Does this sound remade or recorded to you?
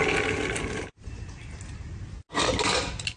recorded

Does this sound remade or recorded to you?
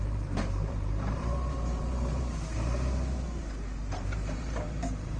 remade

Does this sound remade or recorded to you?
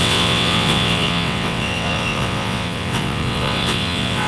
remade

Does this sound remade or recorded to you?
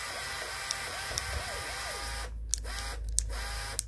recorded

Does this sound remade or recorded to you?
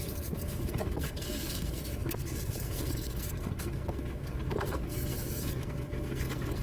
remade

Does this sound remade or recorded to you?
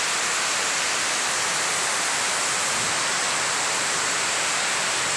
recorded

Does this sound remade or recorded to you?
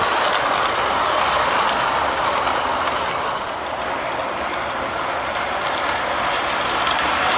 recorded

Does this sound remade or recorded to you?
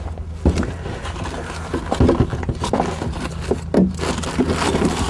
recorded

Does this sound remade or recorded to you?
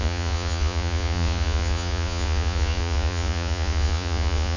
remade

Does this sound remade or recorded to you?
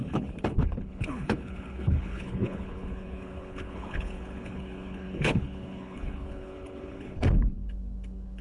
remade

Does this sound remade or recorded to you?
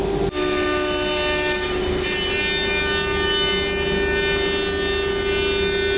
recorded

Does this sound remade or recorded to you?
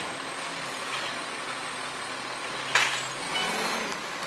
recorded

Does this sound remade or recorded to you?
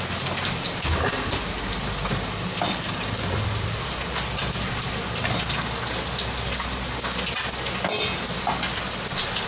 recorded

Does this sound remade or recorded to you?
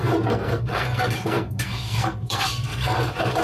remade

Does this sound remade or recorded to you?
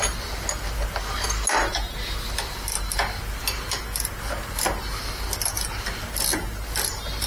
recorded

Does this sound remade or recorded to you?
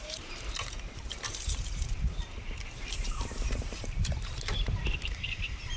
remade